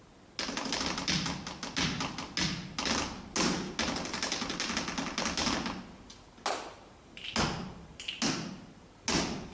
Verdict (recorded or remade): recorded